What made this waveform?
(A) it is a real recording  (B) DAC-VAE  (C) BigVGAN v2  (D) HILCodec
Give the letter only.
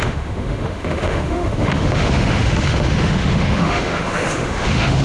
B